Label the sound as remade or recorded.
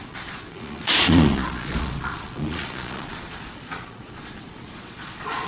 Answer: remade